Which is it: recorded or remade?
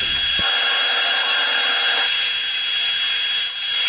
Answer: recorded